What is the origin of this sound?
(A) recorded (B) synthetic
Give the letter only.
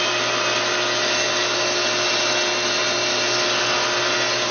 A